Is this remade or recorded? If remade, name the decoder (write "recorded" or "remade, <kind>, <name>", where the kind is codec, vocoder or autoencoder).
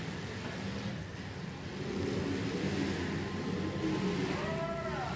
recorded